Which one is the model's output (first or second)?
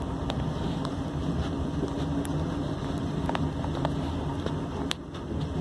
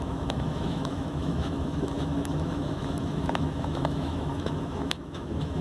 second